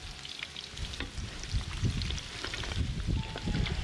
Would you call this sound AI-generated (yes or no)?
no